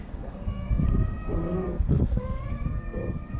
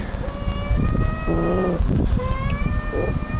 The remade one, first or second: first